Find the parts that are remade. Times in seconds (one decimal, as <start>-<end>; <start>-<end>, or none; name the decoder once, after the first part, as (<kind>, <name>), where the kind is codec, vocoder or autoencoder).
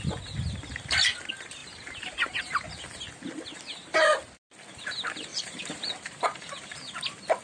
1.6-2.4 (vocoder, BigVGAN v2); 5.3-6.8